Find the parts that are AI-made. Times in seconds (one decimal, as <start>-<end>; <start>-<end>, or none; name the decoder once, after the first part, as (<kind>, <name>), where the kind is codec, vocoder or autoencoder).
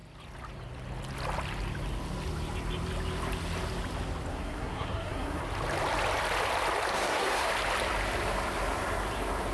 4.3-5.4 (codec, SNAC); 6.9-7.5